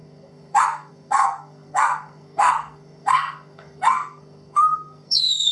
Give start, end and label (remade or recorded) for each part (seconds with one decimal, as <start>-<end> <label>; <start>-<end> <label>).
0.0-5.5 remade